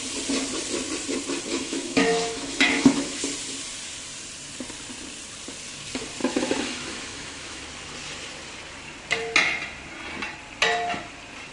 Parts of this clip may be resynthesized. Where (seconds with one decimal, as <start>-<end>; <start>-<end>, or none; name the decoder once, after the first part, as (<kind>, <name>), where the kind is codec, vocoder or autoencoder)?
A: 1.5-3.2 (autoencoder, DAC-VAE); 6.2-7.6